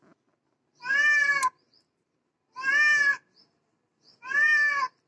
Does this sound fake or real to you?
real